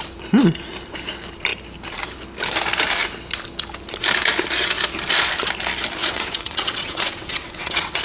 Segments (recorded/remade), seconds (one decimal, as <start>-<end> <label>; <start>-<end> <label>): 0.0-6.0 recorded; 6.0-8.0 remade